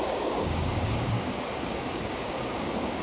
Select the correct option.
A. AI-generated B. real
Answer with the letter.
A